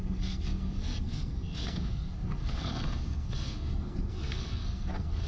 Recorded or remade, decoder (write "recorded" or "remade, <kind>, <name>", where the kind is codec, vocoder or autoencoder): remade, codec, SNAC